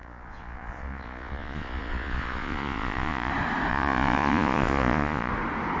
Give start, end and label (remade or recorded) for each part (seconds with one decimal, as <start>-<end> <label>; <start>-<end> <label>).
0.0-3.3 remade; 3.3-3.7 recorded; 3.7-5.3 remade; 5.3-5.8 recorded